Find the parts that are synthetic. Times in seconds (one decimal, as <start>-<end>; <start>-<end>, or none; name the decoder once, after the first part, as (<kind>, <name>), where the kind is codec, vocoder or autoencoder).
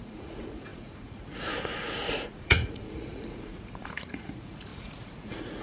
0.0-5.6 (vocoder, Vocos)